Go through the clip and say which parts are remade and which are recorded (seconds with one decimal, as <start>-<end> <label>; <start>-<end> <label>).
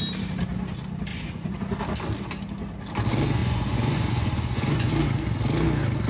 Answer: 0.0-1.1 recorded; 1.1-1.6 remade; 1.6-3.4 recorded; 3.4-4.9 remade; 4.9-6.1 recorded